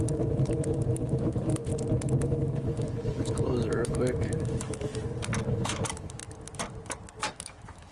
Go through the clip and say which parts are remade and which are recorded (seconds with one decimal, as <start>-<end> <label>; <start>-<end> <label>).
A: 0.0-1.7 remade; 1.7-2.2 recorded; 2.2-4.9 remade; 4.9-5.5 recorded; 5.5-6.2 remade; 6.2-7.3 recorded; 7.3-7.9 remade